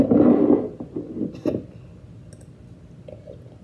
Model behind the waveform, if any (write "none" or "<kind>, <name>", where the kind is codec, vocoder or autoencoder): none